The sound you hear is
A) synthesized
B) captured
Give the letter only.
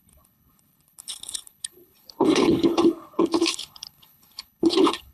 A